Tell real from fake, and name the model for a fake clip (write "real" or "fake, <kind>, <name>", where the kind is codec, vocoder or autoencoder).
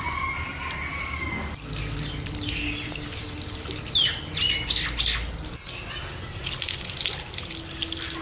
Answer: real